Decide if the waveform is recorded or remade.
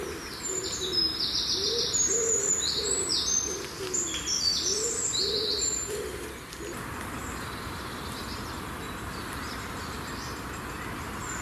remade